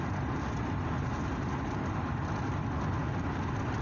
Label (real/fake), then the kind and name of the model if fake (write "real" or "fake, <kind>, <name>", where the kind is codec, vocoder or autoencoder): real